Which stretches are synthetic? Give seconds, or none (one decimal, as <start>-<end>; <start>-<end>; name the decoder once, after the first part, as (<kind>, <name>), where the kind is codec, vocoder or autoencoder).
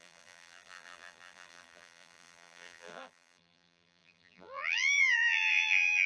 0.0-6.1 (vocoder, BigVGAN v2)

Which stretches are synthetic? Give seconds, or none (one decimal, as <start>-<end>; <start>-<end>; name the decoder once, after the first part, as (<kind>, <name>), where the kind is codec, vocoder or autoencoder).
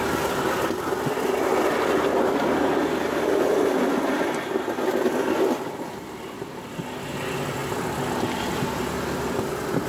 none